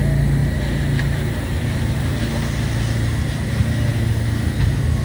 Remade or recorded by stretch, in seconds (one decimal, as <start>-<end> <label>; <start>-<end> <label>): 0.0-0.4 recorded; 0.4-2.0 remade; 2.0-5.0 recorded